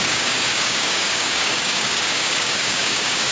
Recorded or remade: remade